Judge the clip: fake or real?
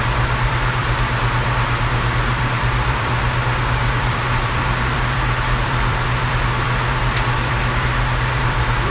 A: fake